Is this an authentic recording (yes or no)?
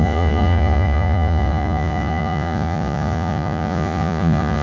no